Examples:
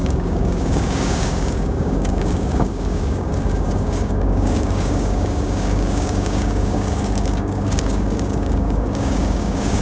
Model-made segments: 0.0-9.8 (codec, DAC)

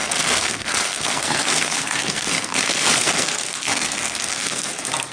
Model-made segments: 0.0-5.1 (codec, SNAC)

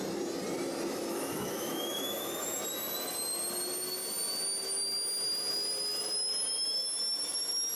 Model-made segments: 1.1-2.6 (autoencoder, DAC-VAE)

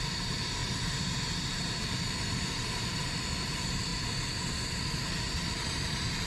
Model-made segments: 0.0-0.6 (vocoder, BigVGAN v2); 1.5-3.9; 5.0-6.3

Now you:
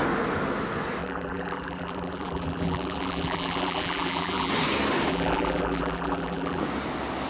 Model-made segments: 1.0-4.5 (vocoder, BigVGAN v2); 5.1-6.6

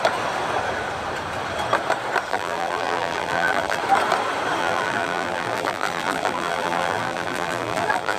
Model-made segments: 2.3-3.8 (vocoder, BigVGAN v2); 4.6-8.2